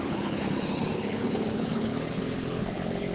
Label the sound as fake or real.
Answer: fake